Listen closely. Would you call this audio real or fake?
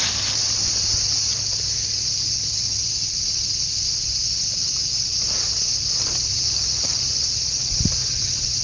real